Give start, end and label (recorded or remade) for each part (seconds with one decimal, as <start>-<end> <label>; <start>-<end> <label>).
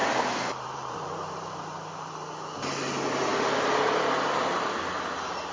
0.0-2.1 remade; 2.1-5.5 recorded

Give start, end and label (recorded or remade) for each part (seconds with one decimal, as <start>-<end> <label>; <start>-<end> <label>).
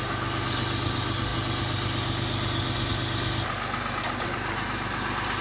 0.0-5.4 recorded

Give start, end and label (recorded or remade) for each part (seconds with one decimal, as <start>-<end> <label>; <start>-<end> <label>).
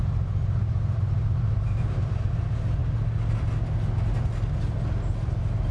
0.0-2.4 remade; 2.4-5.7 recorded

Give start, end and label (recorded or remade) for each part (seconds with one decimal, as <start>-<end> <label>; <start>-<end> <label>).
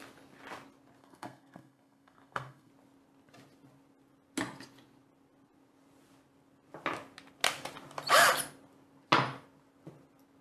0.0-1.0 recorded; 1.0-2.7 remade; 2.7-10.4 recorded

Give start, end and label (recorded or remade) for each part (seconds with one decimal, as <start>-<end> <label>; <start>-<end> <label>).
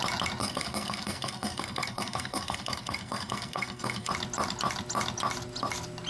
0.0-0.4 recorded; 0.4-4.1 remade; 4.1-6.1 recorded